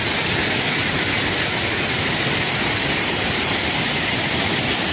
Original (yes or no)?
yes